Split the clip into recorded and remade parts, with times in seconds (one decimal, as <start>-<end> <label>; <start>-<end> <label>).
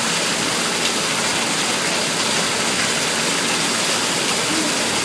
0.0-5.0 recorded